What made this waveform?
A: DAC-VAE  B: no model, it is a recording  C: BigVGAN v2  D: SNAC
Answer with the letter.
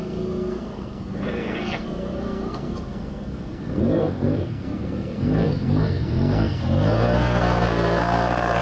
D